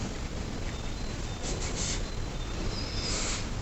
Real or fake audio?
real